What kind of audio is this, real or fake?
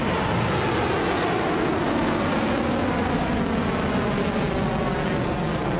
real